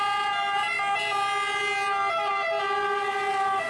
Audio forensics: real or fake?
real